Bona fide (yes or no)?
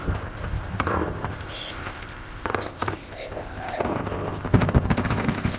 no